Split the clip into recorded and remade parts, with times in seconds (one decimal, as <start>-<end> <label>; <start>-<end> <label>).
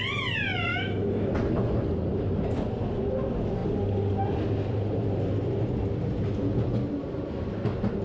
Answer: 0.0-0.7 recorded; 0.7-1.3 remade; 1.3-8.0 recorded